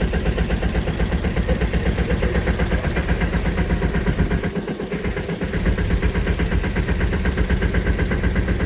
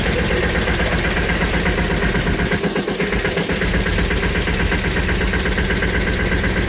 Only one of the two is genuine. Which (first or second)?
second